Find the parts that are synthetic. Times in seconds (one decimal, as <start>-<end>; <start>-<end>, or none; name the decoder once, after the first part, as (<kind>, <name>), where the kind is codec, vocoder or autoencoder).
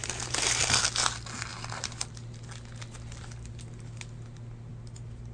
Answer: 0.0-0.8 (vocoder, BigVGAN v2)